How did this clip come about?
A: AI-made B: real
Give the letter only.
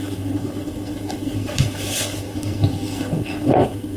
A